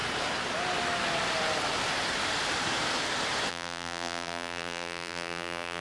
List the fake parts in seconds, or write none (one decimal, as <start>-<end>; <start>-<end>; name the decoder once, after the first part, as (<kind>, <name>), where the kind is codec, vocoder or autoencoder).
3.5-5.8 (vocoder, BigVGAN v2)